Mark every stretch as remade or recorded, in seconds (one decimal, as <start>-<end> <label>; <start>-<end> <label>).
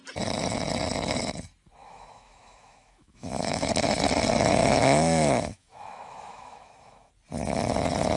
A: 0.0-1.8 recorded; 1.8-3.7 remade; 3.7-4.6 recorded; 4.6-7.1 remade; 7.1-8.2 recorded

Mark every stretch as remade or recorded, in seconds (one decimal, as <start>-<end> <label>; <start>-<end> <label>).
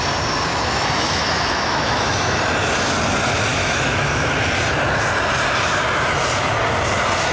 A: 0.0-0.5 recorded; 0.5-2.4 remade; 2.4-3.5 recorded; 3.5-4.5 remade; 4.5-7.3 recorded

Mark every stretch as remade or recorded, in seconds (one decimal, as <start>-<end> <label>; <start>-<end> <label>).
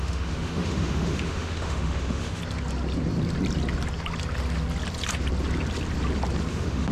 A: 0.0-2.4 remade; 2.4-6.5 recorded; 6.5-6.9 remade